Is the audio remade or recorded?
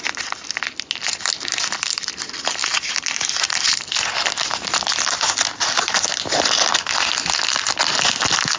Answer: recorded